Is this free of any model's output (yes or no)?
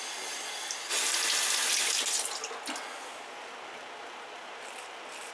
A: yes